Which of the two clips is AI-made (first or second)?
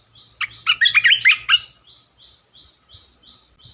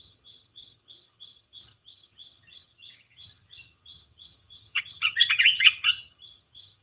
second